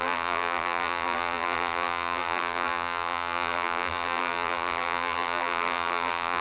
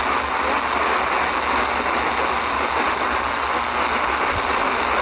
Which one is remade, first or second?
first